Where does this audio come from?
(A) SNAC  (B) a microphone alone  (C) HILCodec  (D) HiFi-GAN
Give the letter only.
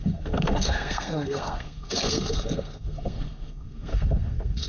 A